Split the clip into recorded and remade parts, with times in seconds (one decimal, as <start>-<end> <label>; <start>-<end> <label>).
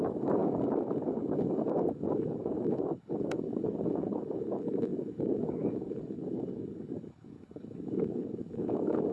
0.0-9.1 remade